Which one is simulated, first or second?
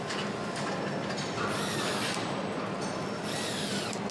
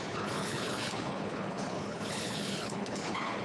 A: second